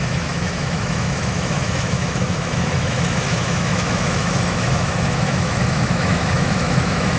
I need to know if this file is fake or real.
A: fake